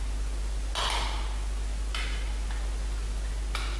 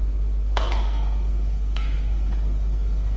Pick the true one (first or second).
first